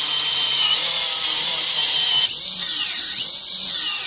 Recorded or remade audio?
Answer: remade